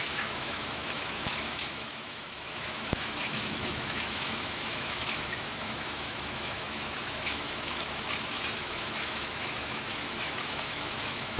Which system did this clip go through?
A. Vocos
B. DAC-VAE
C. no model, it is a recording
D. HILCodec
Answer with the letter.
B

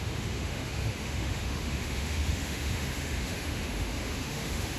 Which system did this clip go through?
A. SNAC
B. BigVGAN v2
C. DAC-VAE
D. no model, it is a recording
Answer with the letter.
C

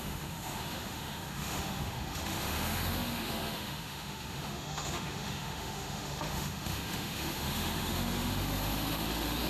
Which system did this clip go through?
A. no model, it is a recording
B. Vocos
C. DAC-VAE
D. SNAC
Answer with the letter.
C